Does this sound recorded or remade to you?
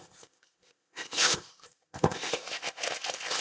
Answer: remade